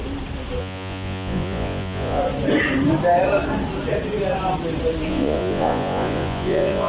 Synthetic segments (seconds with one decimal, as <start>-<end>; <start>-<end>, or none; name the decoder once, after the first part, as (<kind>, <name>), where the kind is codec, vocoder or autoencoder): 0.6-2.2 (vocoder, Vocos); 5.1-6.9